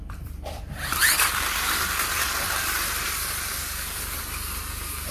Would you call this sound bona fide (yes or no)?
yes